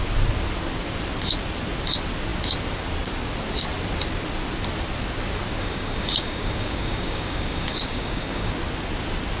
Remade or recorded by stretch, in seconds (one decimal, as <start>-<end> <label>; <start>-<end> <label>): 0.0-5.6 recorded; 5.6-8.5 remade; 8.5-9.4 recorded